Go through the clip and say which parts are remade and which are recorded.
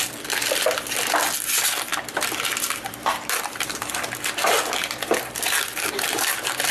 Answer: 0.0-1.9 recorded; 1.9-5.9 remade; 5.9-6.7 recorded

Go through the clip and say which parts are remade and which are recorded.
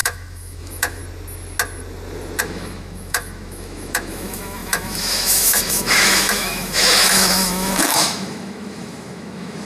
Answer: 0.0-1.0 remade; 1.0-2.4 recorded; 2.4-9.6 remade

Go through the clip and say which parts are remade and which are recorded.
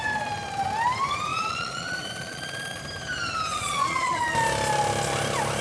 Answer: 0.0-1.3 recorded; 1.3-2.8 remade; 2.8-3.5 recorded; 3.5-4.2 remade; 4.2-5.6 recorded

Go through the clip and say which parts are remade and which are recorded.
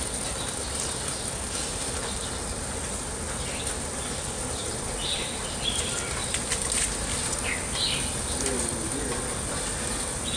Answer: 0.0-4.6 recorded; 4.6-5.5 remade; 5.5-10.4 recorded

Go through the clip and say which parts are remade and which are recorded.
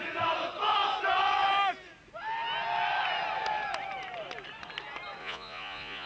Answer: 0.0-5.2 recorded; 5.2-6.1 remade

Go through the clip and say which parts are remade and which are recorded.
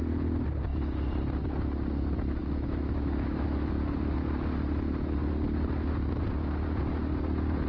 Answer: 0.0-2.4 recorded; 2.4-3.7 remade; 3.7-7.7 recorded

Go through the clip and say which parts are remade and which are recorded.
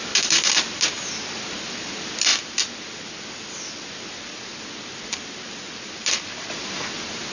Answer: 0.0-7.3 recorded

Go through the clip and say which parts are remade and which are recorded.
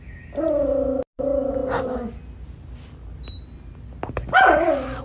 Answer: 0.0-5.0 recorded